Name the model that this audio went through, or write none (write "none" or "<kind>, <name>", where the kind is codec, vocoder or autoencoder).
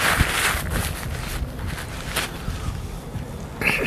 none